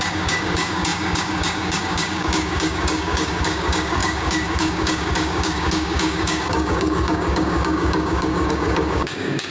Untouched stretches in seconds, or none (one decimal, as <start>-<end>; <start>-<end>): none